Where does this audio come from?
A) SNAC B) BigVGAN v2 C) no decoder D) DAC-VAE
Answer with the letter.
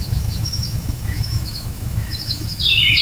D